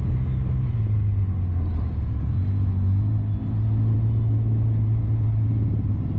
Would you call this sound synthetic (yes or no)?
no